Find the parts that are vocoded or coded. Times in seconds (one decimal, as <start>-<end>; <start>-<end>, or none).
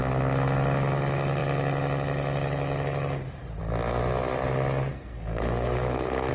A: 4.9-6.3